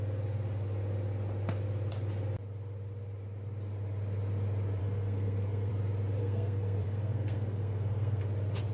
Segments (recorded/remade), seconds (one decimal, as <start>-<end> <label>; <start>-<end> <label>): 0.0-4.8 recorded; 4.8-5.7 remade; 5.7-6.2 recorded; 6.2-8.2 remade; 8.2-8.7 recorded